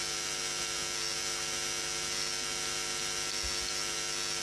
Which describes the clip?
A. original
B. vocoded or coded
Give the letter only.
A